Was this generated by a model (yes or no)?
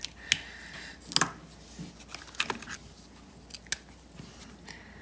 no